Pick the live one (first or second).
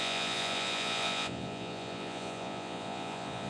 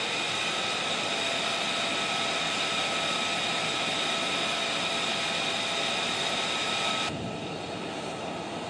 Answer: second